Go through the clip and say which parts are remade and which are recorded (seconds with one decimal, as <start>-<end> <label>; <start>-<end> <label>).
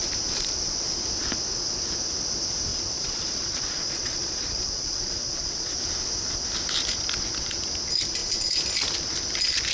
0.0-2.7 recorded; 2.7-5.8 remade; 5.8-9.7 recorded